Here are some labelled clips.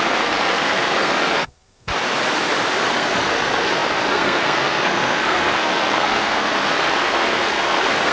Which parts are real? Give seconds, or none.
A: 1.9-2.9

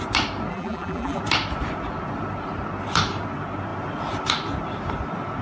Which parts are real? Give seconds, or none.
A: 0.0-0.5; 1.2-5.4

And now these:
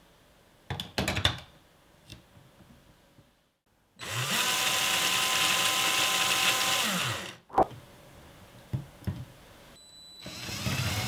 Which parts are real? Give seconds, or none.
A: 0.0-11.1

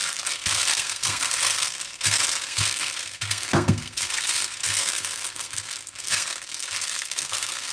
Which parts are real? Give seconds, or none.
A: none

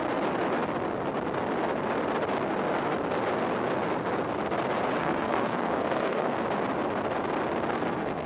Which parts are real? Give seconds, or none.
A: 0.0-5.0; 6.4-7.7